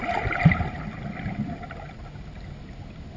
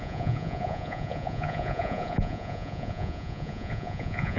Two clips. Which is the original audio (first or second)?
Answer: first